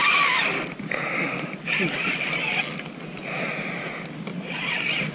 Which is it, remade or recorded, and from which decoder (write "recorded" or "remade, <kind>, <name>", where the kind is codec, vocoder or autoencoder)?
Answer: recorded